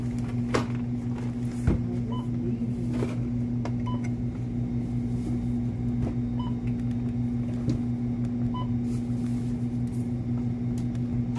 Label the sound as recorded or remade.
recorded